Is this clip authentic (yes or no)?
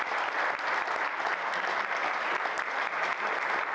yes